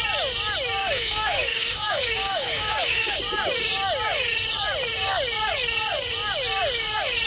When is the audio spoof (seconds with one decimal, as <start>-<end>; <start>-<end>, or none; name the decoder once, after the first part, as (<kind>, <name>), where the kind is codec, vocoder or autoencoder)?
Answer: 0.8-3.2 (codec, DAC)